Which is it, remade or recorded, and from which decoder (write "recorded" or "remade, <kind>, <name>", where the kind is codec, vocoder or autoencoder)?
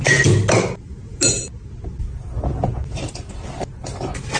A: recorded